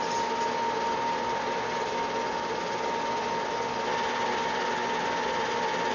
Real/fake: real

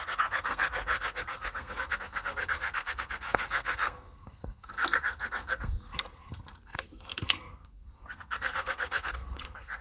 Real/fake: fake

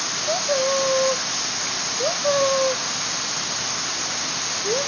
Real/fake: real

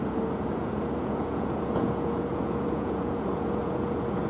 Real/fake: fake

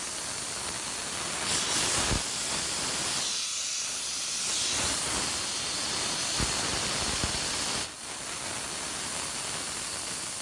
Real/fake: real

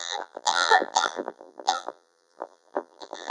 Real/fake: fake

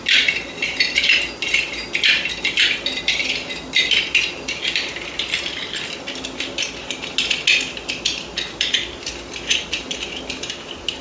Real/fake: real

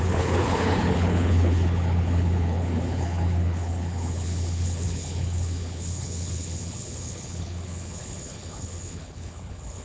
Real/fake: fake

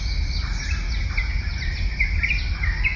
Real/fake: real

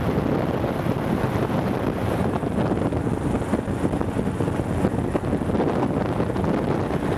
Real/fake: real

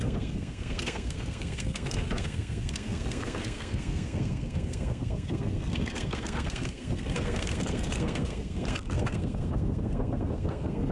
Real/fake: fake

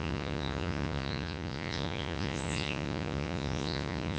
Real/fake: fake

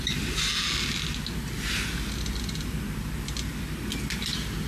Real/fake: real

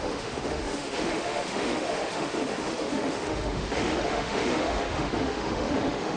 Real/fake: fake